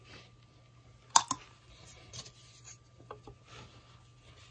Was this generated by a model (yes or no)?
no